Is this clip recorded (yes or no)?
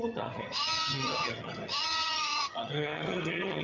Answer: no